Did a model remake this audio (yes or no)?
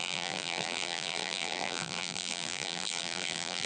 yes